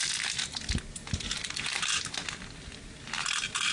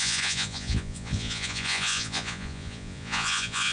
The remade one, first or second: second